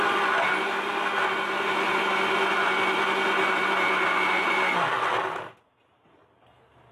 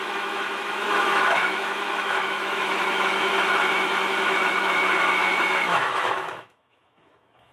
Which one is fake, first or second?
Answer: second